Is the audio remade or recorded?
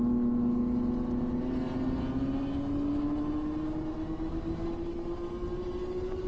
recorded